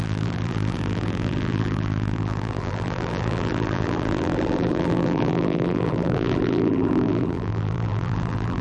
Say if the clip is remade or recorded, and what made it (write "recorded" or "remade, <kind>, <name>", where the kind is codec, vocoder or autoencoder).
remade, vocoder, BigVGAN v2